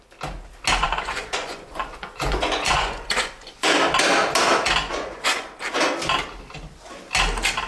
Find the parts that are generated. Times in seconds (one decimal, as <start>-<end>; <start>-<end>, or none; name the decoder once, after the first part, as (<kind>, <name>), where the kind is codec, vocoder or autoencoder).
0.8-3.8 (vocoder, Vocos); 4.8-5.6